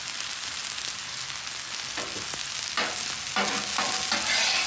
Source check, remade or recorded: recorded